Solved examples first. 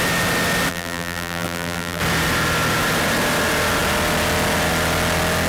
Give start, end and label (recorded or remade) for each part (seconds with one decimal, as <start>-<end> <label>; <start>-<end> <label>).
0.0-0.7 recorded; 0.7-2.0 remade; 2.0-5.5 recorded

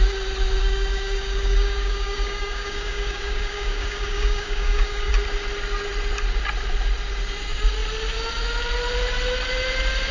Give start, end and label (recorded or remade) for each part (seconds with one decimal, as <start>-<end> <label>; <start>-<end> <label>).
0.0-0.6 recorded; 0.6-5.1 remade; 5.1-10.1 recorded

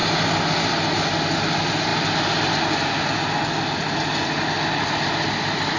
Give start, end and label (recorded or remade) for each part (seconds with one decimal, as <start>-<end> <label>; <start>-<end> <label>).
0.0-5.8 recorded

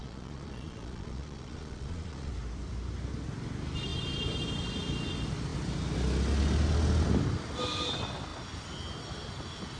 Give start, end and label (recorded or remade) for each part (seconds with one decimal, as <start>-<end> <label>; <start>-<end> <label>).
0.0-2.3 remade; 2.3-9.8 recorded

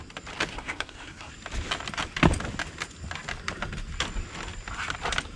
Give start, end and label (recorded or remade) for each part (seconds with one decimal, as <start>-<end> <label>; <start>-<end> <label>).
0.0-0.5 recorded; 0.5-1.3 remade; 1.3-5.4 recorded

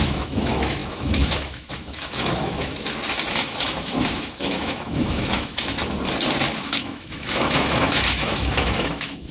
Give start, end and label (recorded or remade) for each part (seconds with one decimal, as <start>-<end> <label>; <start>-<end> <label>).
0.0-2.7 remade; 2.7-3.3 recorded; 3.3-5.8 remade; 5.8-6.6 recorded; 6.6-9.3 remade